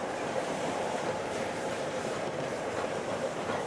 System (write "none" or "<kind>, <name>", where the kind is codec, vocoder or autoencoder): vocoder, BigVGAN v2